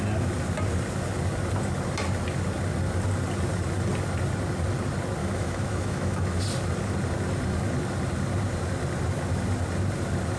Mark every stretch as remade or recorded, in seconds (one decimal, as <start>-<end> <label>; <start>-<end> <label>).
0.0-5.2 recorded; 5.2-6.4 remade; 6.4-10.4 recorded